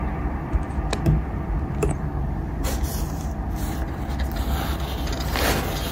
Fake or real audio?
real